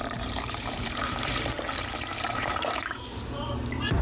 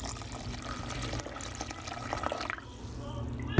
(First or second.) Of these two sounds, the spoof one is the first